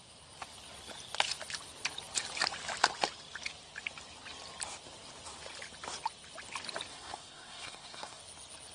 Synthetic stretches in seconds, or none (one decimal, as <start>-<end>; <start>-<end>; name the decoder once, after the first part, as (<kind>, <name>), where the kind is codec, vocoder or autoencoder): 6.9-8.2 (codec, SNAC)